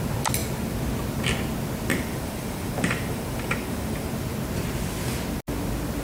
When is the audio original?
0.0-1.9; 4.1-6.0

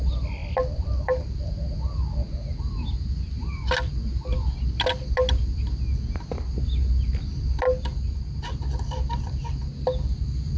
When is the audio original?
0.0-0.4; 1.5-10.6

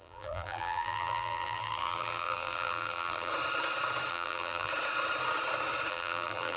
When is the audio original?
3.3-4.1; 4.7-5.9

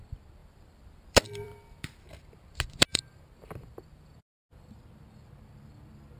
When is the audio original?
0.0-0.4; 2.0-2.9; 4.8-6.2

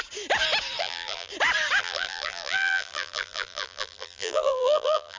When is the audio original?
0.0-0.8; 1.3-1.8

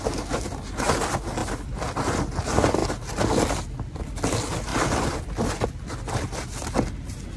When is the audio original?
0.0-1.4; 2.2-4.7; 5.5-7.4

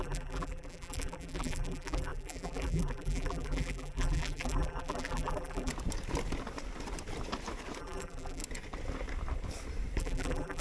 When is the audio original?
5.7-7.8; 8.4-10.0